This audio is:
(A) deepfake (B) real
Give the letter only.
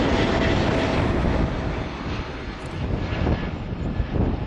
B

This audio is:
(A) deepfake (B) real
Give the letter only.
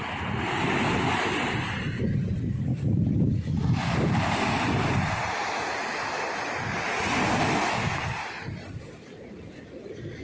B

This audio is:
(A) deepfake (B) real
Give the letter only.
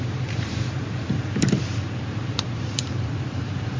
A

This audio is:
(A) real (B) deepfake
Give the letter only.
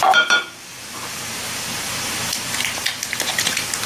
B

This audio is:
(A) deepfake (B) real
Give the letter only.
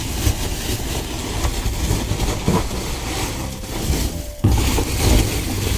B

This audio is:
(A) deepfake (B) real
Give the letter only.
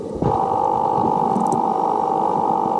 A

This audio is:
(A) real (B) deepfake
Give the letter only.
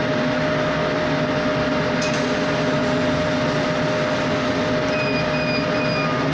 A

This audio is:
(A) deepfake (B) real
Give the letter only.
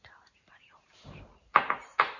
A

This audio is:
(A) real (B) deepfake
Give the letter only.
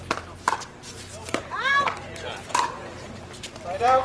B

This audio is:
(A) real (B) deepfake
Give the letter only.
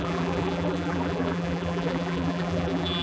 B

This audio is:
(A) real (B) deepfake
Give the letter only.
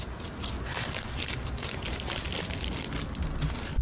A